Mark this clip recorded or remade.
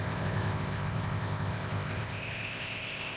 remade